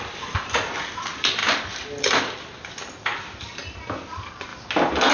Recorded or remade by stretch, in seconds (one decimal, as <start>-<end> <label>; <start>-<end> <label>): 0.0-5.1 recorded